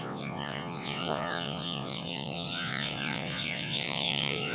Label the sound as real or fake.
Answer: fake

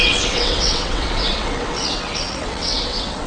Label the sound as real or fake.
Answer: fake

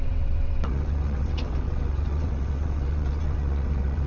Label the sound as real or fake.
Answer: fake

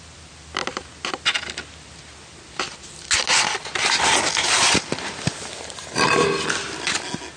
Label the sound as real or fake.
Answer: real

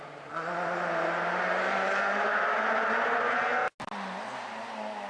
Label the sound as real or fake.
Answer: real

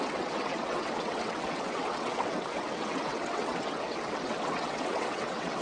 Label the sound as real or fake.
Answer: fake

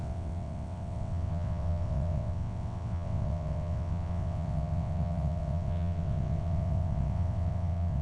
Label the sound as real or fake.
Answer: fake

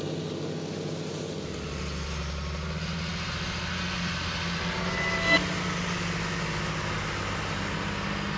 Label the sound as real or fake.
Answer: real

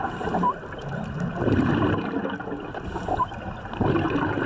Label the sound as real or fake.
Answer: real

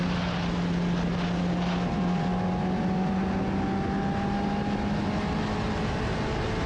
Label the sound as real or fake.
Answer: real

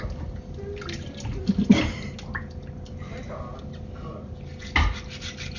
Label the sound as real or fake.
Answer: real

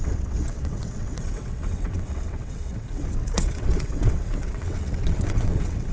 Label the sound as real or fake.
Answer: fake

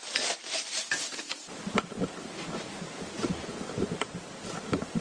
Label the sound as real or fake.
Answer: real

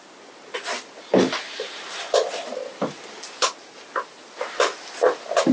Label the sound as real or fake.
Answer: real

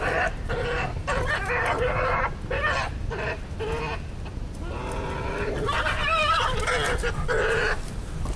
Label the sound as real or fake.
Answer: real